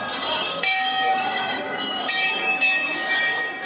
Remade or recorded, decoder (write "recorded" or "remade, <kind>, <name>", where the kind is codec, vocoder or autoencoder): remade, codec, DAC